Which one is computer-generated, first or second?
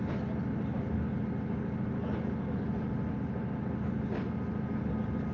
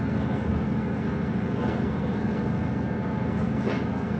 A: second